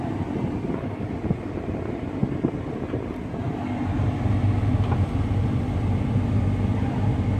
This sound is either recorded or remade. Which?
remade